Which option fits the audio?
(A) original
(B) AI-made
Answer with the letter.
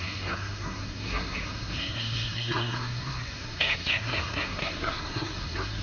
B